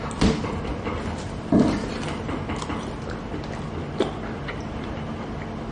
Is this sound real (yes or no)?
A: no